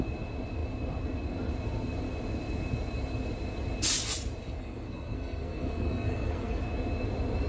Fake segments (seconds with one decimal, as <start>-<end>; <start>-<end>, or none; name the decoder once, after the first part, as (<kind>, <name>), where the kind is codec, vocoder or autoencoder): 4.4-6.6 (codec, SNAC)